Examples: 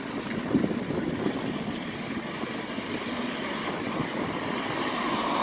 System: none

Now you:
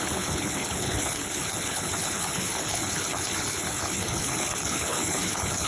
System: codec, HILCodec